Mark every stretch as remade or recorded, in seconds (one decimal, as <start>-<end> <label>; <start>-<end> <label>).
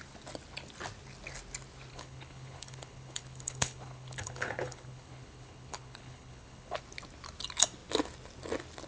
0.0-1.9 recorded; 1.9-6.8 remade; 6.8-8.9 recorded